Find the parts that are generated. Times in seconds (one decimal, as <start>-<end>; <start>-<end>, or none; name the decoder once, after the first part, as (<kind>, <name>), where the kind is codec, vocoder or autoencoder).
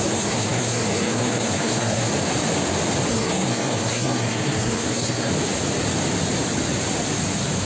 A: 0.0-2.1 (codec, SNAC); 3.1-5.3